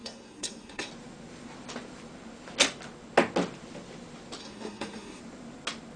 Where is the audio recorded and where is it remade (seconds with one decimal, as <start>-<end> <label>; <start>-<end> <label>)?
0.0-0.9 remade; 0.9-4.4 recorded; 4.4-5.2 remade; 5.2-6.0 recorded